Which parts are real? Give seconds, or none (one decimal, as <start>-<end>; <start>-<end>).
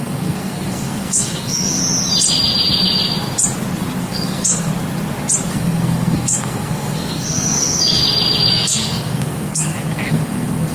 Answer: 1.8-4.0; 4.7-5.5; 8.0-8.5